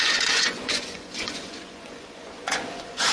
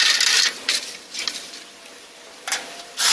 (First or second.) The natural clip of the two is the second